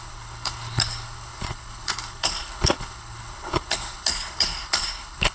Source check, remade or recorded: remade